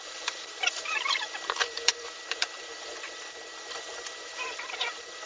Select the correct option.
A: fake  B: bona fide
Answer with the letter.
A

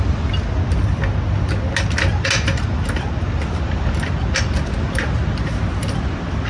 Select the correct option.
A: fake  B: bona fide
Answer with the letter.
B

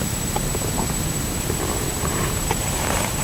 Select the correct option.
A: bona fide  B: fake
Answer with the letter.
B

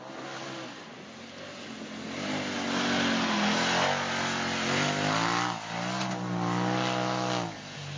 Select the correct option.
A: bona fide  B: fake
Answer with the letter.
A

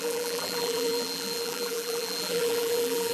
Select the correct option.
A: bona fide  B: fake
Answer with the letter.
B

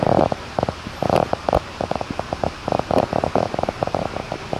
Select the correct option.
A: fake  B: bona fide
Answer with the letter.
A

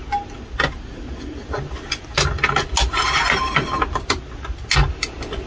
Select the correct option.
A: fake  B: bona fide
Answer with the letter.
B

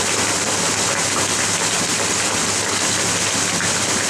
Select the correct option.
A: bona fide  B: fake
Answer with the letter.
A